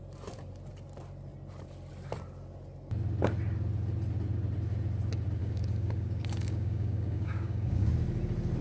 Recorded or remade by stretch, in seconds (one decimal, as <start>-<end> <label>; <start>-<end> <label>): 0.0-5.4 recorded; 5.4-7.9 remade; 7.9-8.6 recorded